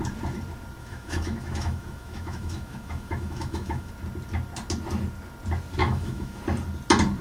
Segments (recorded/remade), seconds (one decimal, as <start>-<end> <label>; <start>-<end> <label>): 0.0-0.8 recorded; 0.8-3.9 remade; 3.9-5.8 recorded; 5.8-6.4 remade; 6.4-7.2 recorded